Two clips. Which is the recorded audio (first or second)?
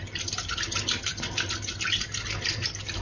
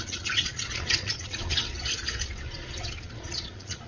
first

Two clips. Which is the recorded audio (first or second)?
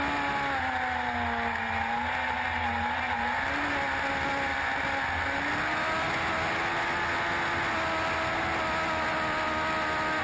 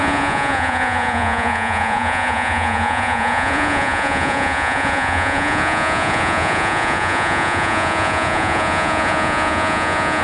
first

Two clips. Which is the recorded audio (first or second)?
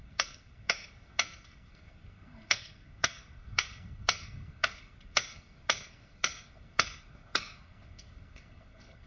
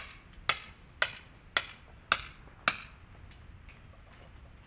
second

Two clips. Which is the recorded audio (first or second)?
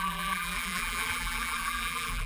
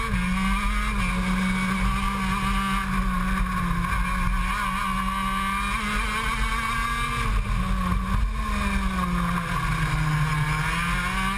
second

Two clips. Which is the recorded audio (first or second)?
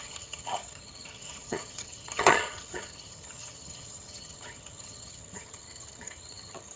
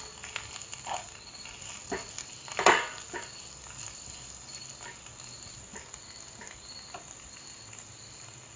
second